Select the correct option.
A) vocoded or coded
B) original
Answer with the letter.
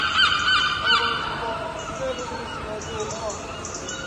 B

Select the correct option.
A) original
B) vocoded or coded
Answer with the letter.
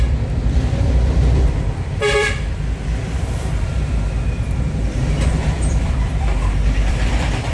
B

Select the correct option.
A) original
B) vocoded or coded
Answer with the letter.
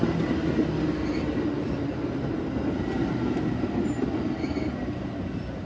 A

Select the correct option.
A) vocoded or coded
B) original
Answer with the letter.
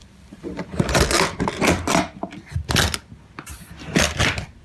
B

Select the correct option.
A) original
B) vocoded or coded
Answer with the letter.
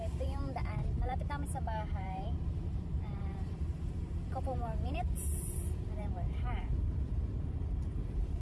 B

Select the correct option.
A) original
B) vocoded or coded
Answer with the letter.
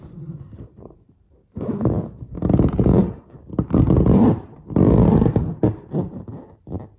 B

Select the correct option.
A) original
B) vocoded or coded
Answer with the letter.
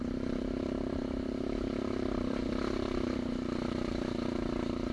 B